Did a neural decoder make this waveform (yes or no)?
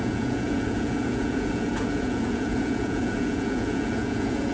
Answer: yes